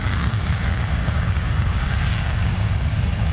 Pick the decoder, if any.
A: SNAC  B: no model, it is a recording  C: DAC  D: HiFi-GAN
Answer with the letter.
C